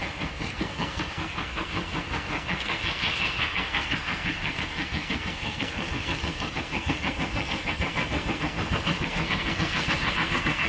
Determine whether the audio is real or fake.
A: fake